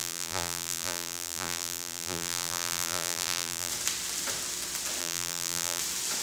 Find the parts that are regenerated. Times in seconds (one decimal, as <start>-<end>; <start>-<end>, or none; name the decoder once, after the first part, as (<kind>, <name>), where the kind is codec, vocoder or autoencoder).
0.0-3.7 (vocoder, BigVGAN v2); 5.0-5.8